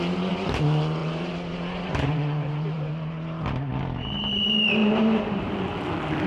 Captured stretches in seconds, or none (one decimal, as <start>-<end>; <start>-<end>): 0.0-1.0; 2.9-4.8; 5.5-6.3